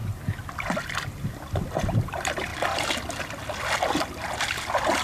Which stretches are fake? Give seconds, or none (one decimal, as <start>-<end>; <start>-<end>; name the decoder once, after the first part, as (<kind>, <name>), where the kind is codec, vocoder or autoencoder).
none